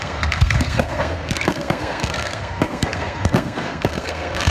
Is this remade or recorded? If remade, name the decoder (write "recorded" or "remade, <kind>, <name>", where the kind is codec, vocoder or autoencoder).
remade, codec, SNAC